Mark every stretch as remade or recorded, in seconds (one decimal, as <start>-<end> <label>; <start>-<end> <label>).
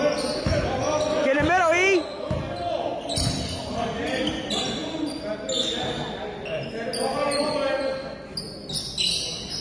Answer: 0.0-9.6 recorded